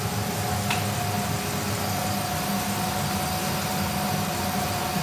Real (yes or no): yes